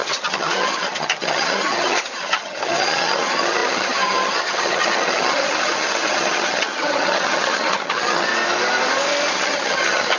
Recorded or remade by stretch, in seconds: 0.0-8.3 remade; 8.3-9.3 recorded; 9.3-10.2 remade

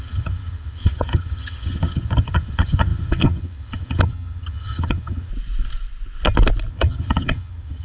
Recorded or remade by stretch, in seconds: 0.0-5.3 remade; 5.3-6.7 recorded; 6.7-7.8 remade

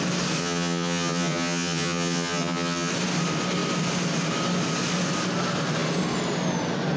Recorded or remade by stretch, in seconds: 0.0-0.4 recorded; 0.4-2.9 remade; 2.9-7.0 recorded

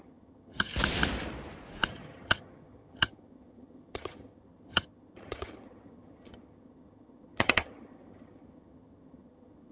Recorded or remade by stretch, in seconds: 0.0-0.7 remade; 0.7-1.9 recorded; 1.9-9.7 remade

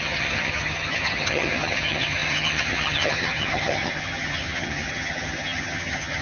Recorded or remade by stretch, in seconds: 0.0-6.2 remade